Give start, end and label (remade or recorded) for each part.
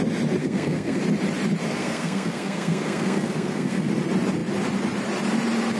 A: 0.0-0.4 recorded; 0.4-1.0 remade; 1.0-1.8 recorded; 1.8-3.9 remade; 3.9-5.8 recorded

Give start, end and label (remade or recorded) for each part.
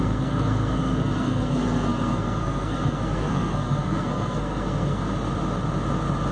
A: 0.0-5.0 remade; 5.0-6.3 recorded